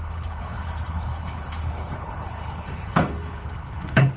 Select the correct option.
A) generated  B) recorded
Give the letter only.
A